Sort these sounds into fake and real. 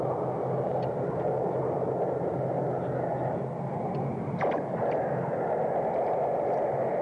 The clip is real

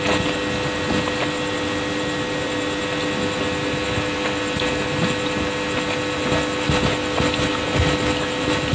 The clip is real